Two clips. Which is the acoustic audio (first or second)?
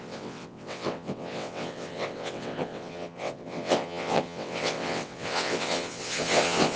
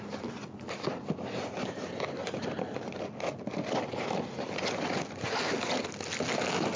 second